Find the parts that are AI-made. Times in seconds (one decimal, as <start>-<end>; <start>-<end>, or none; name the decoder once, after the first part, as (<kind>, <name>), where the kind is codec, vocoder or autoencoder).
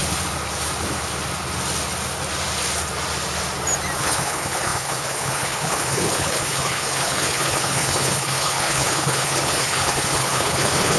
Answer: 4.0-11.0 (codec, HILCodec)